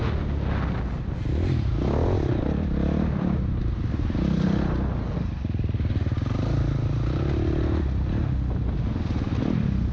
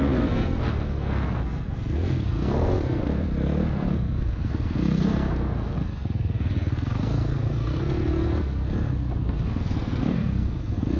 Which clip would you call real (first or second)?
first